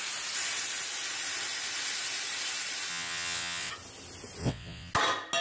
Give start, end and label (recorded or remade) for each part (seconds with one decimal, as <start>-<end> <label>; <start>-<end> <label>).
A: 0.0-2.9 recorded; 2.9-3.7 remade; 3.7-4.4 recorded; 4.4-4.9 remade; 4.9-5.4 recorded